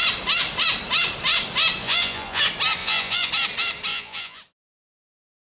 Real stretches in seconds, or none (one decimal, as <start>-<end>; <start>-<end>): 0.0-1.8; 2.4-2.8; 3.3-3.9; 4.4-5.6